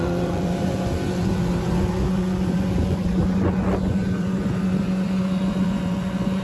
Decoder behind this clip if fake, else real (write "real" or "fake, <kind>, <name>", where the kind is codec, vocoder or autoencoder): fake, vocoder, Vocos